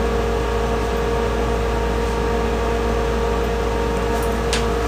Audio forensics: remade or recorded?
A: recorded